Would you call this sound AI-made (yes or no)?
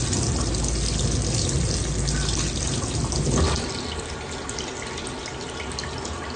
no